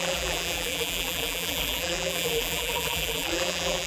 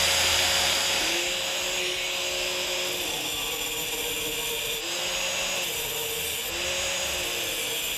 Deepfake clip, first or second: first